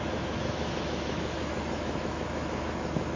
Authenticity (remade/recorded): remade